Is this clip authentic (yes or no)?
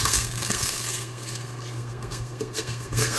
no